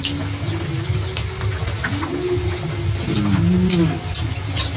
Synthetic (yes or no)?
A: no